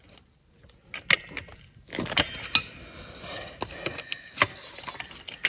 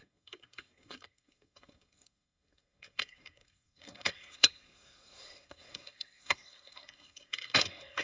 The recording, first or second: first